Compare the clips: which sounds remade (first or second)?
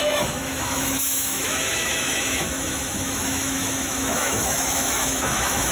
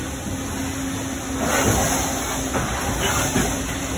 first